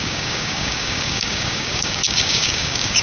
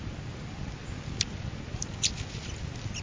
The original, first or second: second